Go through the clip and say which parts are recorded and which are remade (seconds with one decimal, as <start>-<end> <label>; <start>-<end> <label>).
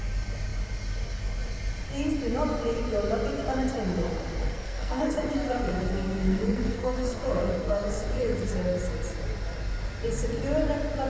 0.0-4.4 recorded; 4.4-8.5 remade; 8.5-11.1 recorded